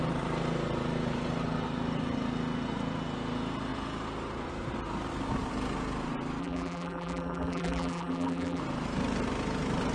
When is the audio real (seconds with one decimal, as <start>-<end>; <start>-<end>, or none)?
0.0-6.4; 8.6-9.9